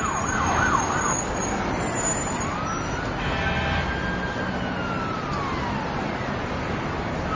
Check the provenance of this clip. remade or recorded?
recorded